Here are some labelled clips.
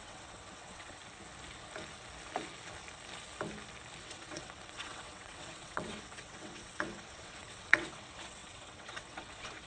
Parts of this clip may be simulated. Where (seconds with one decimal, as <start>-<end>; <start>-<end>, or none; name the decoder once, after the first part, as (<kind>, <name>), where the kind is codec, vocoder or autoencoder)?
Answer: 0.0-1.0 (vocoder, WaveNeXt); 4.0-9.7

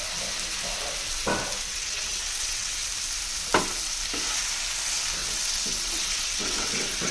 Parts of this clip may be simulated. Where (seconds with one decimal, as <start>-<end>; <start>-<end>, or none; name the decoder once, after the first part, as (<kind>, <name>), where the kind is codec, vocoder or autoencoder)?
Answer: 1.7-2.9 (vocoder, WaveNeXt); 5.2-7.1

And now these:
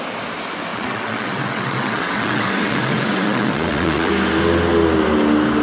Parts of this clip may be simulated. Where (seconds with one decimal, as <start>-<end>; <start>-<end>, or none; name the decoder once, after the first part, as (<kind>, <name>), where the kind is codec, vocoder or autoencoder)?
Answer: 0.7-4.1 (vocoder, WaveNeXt)

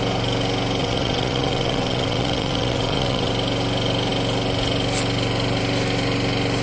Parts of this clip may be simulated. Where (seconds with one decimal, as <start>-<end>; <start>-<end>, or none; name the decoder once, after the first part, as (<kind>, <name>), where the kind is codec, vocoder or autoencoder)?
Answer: 0.8-3.3 (vocoder, WaveNeXt)

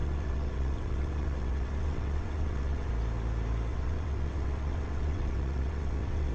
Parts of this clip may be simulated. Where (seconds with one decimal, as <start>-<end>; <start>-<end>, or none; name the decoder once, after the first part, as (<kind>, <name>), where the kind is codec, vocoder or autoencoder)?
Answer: 0.0-2.9 (vocoder, WaveNeXt); 3.7-6.3

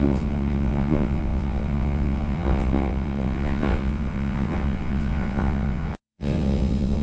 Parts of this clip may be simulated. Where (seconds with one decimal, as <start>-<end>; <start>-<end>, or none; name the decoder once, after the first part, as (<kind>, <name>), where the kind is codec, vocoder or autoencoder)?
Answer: 0.0-7.0 (vocoder, WaveNeXt)

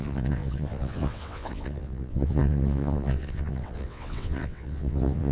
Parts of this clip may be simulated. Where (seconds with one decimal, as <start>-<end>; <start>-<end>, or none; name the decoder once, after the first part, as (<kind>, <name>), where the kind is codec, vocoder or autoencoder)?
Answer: 0.0-5.3 (vocoder, WaveNeXt)